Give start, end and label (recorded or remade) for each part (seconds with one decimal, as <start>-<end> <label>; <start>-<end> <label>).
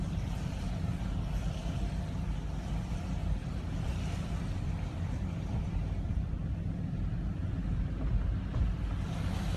0.0-3.2 recorded; 3.2-6.8 remade; 6.8-9.6 recorded